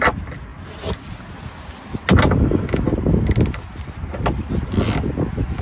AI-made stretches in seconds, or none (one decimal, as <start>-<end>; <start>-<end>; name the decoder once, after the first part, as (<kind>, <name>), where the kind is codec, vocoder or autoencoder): none